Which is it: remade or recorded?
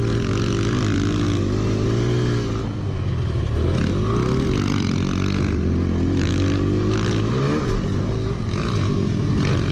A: recorded